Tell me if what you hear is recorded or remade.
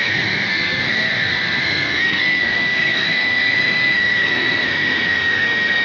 remade